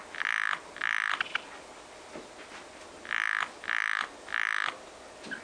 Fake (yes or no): no